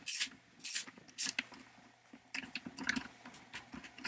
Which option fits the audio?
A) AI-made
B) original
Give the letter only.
B